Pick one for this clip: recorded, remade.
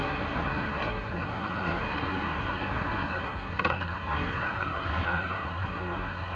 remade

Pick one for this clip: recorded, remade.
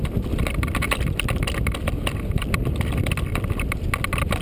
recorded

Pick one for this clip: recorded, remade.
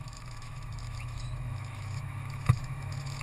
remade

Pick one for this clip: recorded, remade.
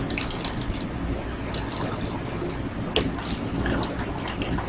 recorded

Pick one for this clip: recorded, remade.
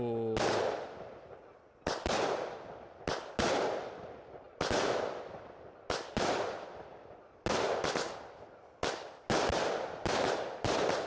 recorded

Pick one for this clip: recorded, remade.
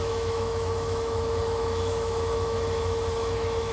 remade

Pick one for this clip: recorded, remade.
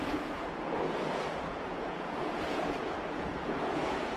remade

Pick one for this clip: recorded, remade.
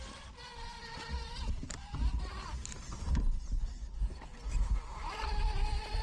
remade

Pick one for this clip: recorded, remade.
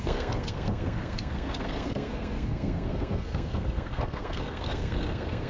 remade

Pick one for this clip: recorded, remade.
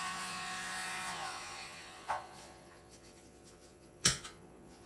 remade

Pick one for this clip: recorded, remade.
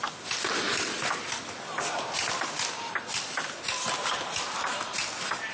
recorded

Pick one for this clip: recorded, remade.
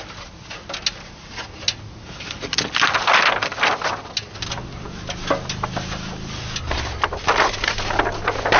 recorded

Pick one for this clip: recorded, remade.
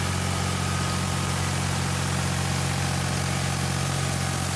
recorded